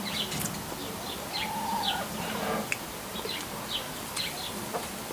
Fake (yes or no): no